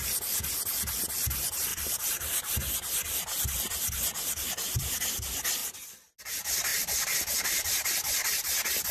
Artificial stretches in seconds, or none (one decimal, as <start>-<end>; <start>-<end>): 1.7-2.5